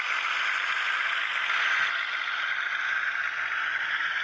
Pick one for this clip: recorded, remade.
recorded